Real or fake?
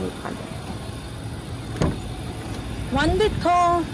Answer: real